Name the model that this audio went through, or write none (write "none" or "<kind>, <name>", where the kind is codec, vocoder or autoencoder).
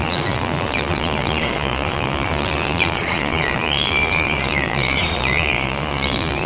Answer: vocoder, Vocos